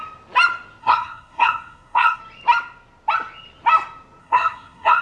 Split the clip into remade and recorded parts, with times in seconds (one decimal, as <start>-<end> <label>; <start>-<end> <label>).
0.0-0.8 recorded; 0.8-2.2 remade; 2.2-4.2 recorded; 4.2-5.0 remade